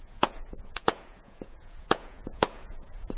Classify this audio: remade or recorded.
remade